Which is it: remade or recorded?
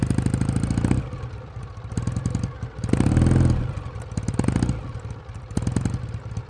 recorded